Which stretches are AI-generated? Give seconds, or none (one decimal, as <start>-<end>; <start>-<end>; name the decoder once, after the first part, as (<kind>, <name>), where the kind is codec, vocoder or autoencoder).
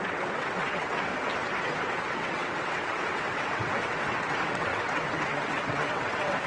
0.0-1.1 (vocoder, WaveNeXt); 1.7-6.5